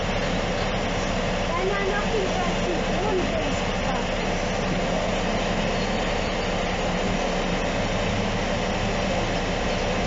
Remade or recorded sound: recorded